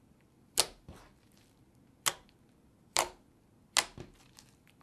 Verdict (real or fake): real